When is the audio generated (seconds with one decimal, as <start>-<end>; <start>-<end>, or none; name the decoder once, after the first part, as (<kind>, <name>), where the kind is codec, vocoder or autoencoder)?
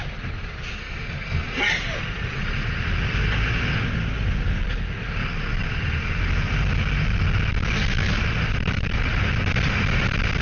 0.8-1.6 (codec, SNAC)